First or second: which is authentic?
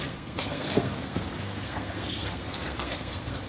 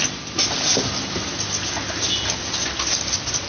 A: second